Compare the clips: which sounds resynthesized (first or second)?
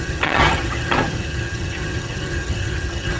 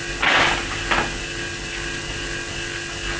first